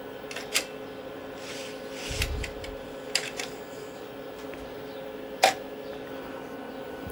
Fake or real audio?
real